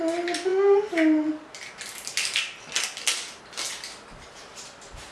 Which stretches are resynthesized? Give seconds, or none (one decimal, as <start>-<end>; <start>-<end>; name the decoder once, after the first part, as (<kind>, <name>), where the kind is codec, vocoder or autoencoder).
none

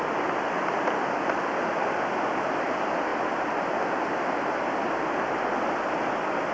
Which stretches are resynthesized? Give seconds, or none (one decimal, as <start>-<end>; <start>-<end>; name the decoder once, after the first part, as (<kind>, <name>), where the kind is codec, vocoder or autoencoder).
none

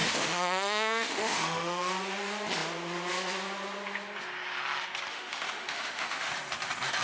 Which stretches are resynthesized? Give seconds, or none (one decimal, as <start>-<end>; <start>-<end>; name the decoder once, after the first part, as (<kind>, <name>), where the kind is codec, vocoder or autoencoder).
0.0-1.9 (autoencoder, DAC-VAE); 5.1-6.3

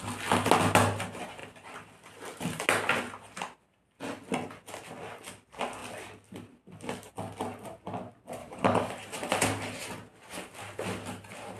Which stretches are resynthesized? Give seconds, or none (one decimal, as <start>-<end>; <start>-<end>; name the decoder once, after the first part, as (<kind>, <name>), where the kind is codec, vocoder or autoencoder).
8.4-8.9 (codec, DAC)

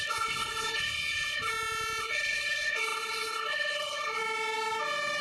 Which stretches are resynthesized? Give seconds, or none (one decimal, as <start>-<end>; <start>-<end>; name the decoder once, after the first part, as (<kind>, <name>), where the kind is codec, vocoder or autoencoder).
0.0-1.5 (codec, HILCodec); 2.0-4.2